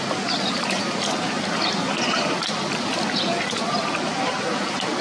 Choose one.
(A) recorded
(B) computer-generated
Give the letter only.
A